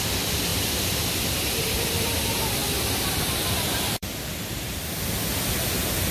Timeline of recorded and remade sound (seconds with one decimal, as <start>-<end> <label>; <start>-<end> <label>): 0.0-0.5 recorded; 0.5-2.1 remade; 2.1-2.6 recorded; 2.6-3.4 remade; 3.4-4.0 recorded; 4.0-5.4 remade; 5.4-6.1 recorded